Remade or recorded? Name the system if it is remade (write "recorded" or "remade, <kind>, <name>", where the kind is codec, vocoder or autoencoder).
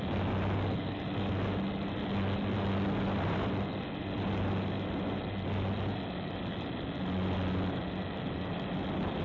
recorded